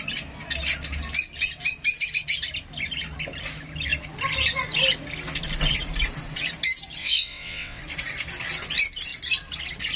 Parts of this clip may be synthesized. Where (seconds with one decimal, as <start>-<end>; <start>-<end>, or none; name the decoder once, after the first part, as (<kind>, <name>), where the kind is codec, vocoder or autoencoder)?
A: 7.0-7.8 (vocoder, WaveNeXt)